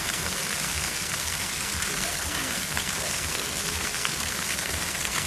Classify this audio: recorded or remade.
remade